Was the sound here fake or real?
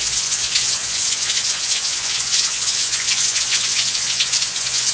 fake